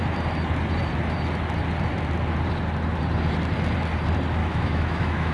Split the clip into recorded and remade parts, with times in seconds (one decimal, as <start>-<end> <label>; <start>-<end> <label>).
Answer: 0.0-4.4 recorded; 4.4-5.3 remade